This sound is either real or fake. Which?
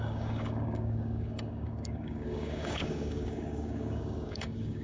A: fake